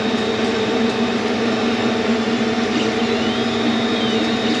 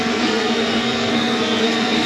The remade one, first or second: second